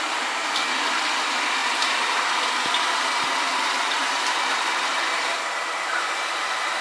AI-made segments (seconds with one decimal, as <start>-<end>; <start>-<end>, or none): 0.0-0.4; 1.2-6.8